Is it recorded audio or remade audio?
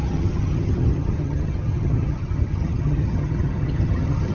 remade